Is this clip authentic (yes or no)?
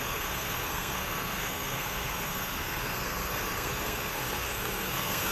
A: no